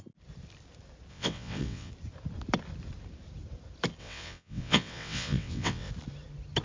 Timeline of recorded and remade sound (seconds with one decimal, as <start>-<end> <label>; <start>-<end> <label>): 0.0-1.1 recorded; 1.1-1.9 remade; 1.9-4.0 recorded; 4.0-5.9 remade; 5.9-6.6 recorded